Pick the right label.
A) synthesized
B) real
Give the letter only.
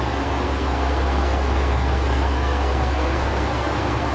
A